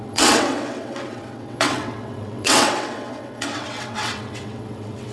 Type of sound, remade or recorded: remade